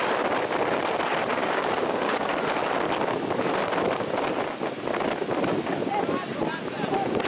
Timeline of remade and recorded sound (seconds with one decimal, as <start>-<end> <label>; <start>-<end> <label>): 0.0-1.3 recorded; 1.3-2.1 remade; 2.1-7.3 recorded